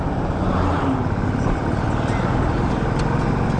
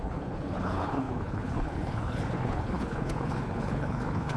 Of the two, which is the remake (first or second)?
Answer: second